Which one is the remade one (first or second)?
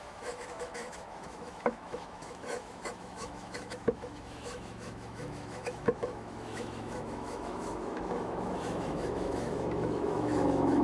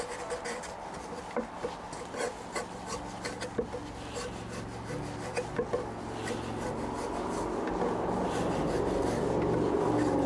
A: first